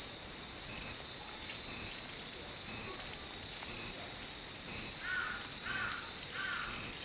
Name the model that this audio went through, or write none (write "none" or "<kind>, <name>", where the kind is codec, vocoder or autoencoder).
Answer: none